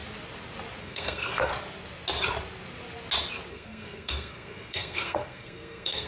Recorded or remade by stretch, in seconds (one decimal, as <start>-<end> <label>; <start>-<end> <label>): 0.0-0.8 recorded; 0.8-1.5 remade; 1.5-3.5 recorded; 3.5-6.1 remade